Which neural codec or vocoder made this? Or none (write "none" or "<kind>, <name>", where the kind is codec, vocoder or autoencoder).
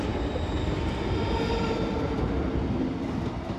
none